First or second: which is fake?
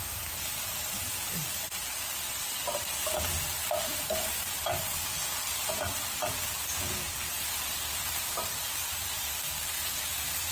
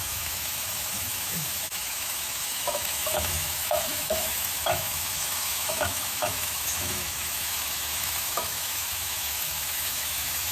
second